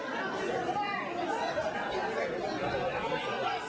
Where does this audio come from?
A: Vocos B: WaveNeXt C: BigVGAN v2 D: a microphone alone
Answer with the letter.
D